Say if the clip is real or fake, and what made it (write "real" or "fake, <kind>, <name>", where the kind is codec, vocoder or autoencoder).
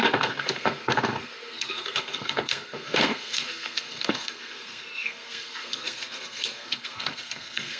fake, codec, SNAC